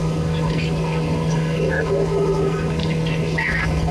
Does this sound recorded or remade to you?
remade